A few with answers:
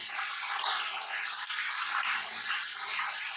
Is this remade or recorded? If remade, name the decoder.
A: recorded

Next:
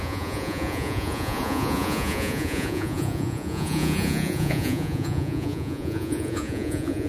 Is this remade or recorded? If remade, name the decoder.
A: remade, vocoder, Vocos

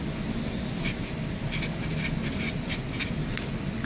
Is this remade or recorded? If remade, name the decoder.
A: recorded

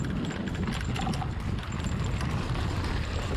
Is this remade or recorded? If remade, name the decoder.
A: recorded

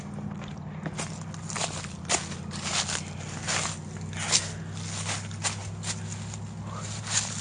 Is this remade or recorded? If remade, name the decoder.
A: recorded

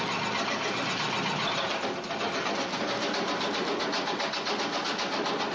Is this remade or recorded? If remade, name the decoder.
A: recorded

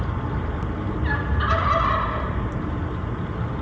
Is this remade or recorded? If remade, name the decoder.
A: recorded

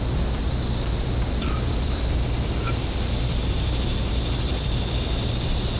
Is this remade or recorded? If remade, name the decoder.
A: recorded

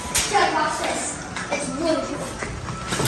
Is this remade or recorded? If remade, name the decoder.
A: recorded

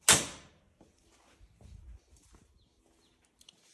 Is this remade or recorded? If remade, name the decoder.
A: recorded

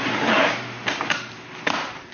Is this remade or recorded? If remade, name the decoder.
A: remade, vocoder, BigVGAN v2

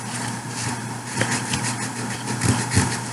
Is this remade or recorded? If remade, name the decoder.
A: recorded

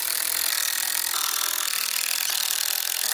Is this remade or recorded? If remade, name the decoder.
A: remade, vocoder, BigVGAN v2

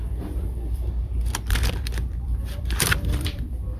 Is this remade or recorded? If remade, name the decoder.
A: remade, vocoder, BigVGAN v2